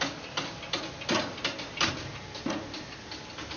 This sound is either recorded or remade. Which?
recorded